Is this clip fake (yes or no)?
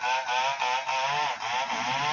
no